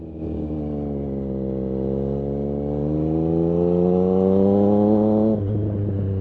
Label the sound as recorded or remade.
recorded